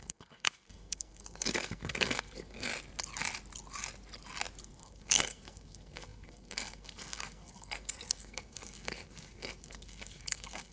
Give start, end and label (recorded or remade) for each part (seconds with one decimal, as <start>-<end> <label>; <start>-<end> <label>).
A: 0.0-2.7 remade; 2.7-4.6 recorded; 4.6-10.7 remade